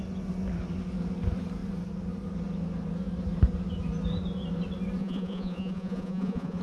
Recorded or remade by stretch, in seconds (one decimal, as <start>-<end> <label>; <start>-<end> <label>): 0.0-5.0 recorded; 5.0-6.6 remade